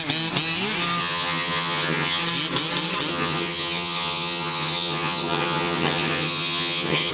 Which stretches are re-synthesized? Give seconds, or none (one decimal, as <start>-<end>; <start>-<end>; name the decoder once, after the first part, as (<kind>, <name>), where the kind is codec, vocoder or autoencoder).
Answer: 1.0-2.2 (vocoder, HiFi-GAN); 3.1-7.1